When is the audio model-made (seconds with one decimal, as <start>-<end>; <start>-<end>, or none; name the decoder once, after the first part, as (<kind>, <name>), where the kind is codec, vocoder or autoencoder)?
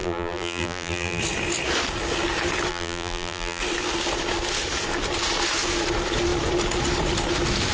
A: 0.0-1.2 (vocoder, BigVGAN v2); 2.7-3.6